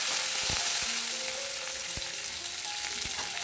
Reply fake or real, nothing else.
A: real